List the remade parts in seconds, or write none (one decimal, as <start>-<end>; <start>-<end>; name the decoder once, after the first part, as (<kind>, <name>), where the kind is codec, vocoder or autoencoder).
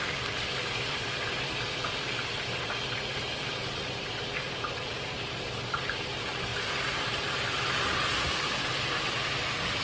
0.0-9.8 (vocoder, BigVGAN v2)